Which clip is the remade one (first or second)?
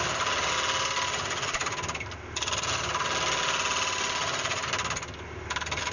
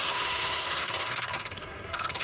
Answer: second